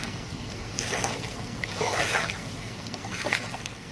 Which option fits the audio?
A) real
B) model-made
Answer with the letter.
B